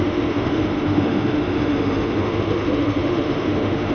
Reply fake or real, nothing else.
fake